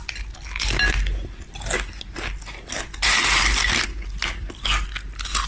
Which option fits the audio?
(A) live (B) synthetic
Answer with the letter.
A